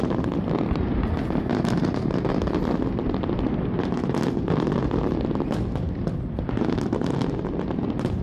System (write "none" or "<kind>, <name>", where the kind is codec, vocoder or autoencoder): none